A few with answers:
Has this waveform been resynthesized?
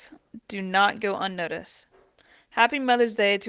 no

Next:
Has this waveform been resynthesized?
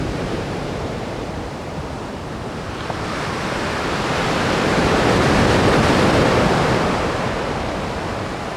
yes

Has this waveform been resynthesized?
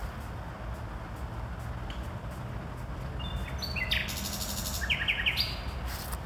no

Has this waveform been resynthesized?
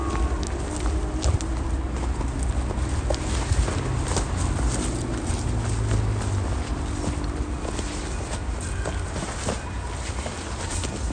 no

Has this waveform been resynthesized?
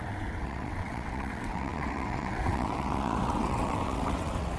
yes